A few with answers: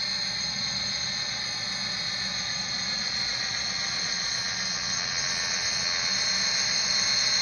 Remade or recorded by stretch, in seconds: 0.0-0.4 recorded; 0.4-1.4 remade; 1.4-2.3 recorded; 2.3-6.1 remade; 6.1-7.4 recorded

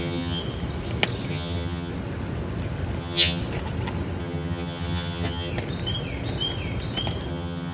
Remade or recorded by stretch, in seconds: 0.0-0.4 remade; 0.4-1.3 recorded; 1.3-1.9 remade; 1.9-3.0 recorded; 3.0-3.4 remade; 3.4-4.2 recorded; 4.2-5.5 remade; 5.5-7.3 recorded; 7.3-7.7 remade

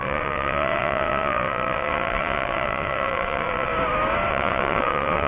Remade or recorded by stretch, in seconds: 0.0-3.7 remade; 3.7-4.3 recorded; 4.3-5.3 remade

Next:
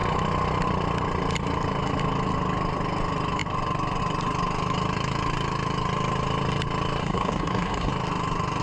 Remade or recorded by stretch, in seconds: 0.0-7.0 recorded; 7.0-7.9 remade; 7.9-8.6 recorded